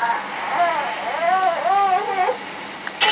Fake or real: real